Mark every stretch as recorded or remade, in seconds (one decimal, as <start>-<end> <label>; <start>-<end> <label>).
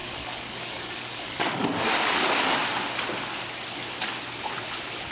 0.0-2.6 remade; 2.6-5.1 recorded